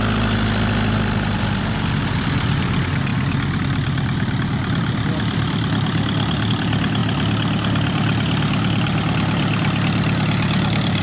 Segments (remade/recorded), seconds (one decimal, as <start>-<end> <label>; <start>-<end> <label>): 0.0-11.0 recorded